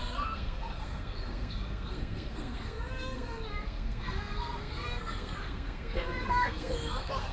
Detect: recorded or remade remade